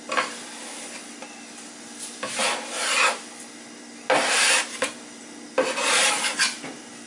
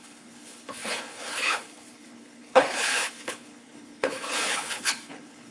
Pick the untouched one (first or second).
first